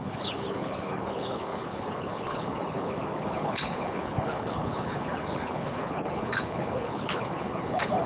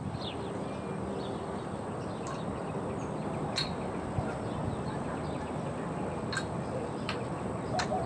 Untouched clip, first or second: second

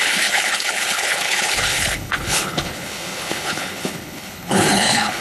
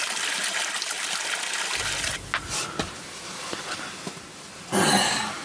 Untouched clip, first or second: second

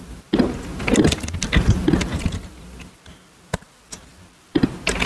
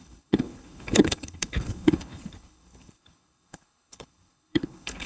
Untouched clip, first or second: first